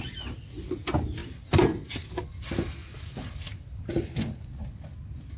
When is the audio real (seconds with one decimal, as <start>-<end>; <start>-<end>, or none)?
0.0-1.2; 2.0-2.8; 3.8-5.4